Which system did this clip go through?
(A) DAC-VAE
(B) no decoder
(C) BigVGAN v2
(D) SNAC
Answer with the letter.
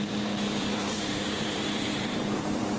C